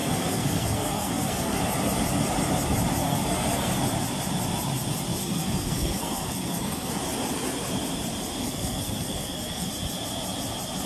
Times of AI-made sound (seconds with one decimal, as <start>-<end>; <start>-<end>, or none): 0.0-1.6; 3.0-3.8; 5.2-6.9; 8.4-9.7